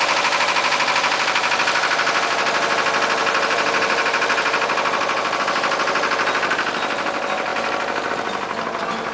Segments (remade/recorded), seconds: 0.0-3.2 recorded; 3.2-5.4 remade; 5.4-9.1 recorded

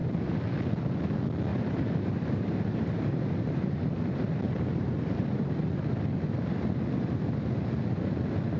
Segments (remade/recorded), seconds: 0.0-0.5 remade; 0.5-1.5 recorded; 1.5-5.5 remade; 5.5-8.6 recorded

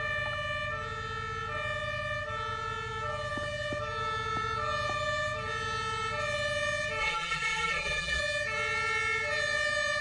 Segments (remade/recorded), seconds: 0.0-7.0 recorded; 7.0-8.2 remade; 8.2-10.0 recorded

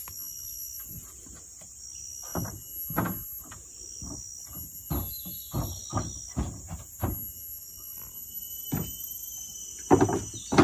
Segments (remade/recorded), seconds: 0.0-10.6 recorded